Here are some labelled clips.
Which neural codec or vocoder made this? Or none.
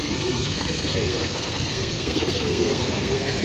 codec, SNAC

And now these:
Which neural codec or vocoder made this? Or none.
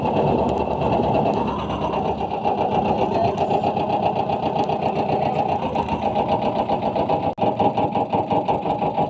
none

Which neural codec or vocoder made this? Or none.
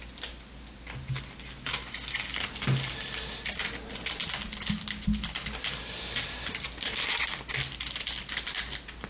none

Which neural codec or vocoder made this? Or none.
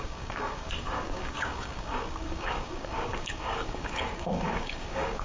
codec, DAC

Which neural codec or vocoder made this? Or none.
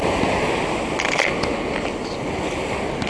none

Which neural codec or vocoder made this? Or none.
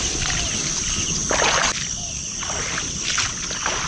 none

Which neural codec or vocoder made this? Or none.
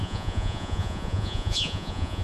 vocoder, Vocos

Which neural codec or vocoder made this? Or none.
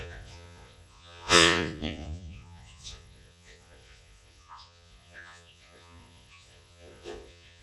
vocoder, Vocos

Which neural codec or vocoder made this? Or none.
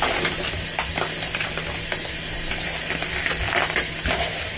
none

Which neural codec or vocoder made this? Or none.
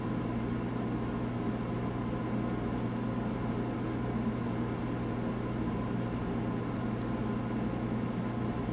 none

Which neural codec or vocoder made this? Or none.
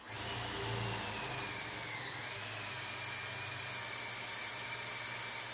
none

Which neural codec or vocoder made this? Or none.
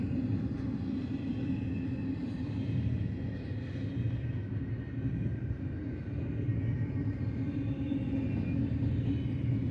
none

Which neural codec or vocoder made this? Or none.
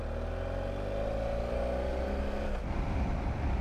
none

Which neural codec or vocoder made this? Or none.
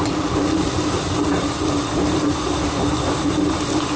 none